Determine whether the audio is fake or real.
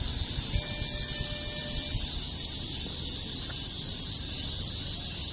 real